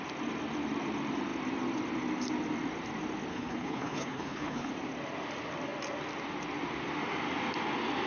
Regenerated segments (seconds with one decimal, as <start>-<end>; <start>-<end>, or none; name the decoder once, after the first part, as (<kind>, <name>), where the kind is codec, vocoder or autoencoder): 3.3-4.7 (codec, HILCodec)